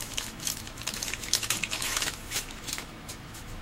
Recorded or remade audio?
remade